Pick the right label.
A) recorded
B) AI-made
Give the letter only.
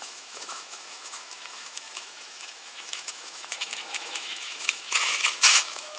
B